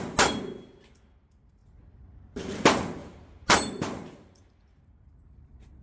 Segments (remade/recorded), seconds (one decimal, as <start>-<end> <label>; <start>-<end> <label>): 0.0-5.8 recorded